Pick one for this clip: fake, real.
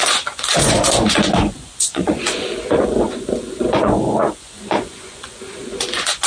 fake